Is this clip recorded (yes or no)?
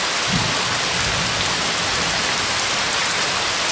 yes